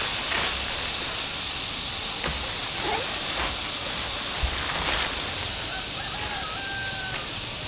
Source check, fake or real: real